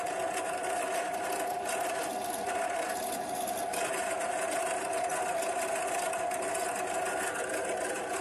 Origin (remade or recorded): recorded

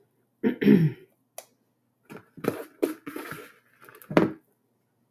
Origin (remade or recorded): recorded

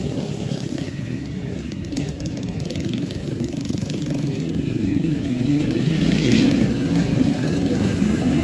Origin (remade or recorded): remade